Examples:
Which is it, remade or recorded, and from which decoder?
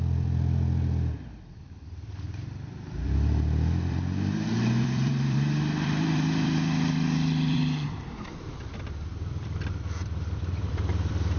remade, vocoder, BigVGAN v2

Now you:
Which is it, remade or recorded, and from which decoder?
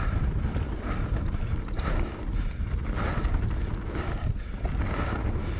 recorded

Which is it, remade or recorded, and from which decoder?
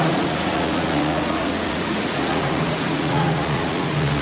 remade, vocoder, Vocos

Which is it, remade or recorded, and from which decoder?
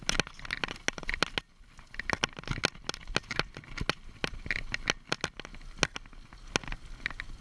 recorded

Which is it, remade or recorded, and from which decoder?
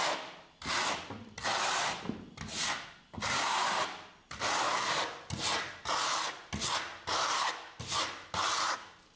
recorded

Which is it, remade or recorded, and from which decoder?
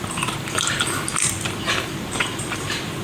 recorded